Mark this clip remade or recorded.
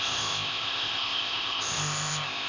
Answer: remade